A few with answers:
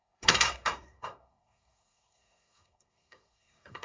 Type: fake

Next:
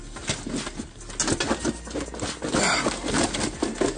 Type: real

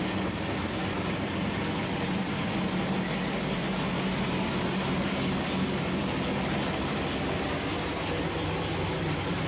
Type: real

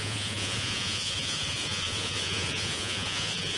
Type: fake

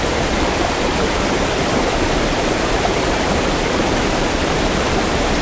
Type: fake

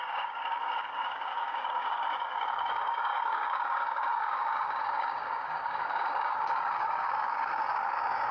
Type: fake